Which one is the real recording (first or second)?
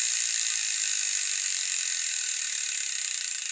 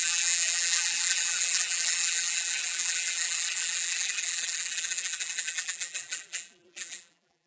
first